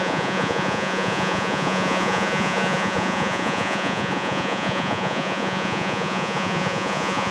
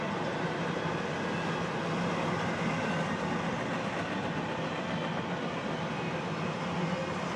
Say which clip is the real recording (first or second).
second